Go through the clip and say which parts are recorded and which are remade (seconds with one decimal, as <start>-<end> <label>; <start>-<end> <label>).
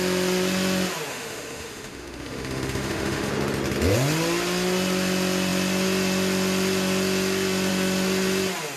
0.0-1.1 recorded; 1.1-3.3 remade; 3.3-8.8 recorded